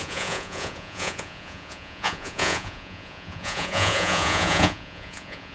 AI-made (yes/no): yes